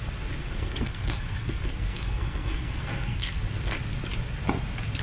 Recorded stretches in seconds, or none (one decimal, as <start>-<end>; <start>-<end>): 0.0-0.4; 3.4-5.0